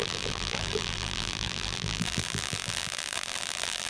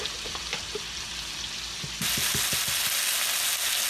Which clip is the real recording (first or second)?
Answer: second